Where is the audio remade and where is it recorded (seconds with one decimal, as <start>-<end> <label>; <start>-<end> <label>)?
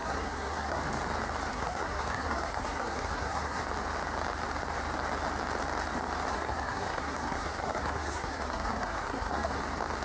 0.0-0.8 remade; 0.8-1.5 recorded; 1.5-3.6 remade; 3.6-6.3 recorded; 6.3-9.6 remade; 9.6-10.0 recorded